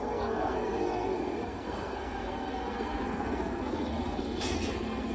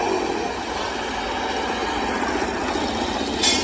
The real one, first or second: second